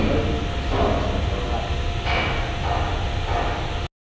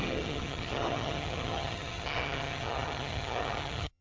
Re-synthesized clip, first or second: second